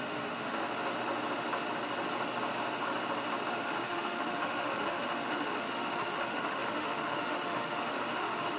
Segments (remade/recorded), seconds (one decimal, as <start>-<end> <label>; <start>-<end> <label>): 0.0-0.6 remade; 0.6-3.5 recorded; 3.5-8.6 remade